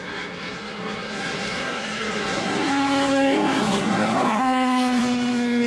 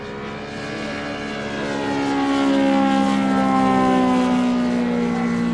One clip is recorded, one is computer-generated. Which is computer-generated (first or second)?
first